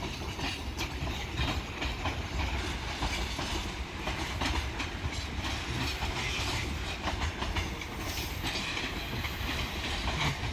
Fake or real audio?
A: fake